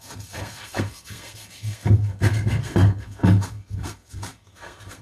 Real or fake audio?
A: fake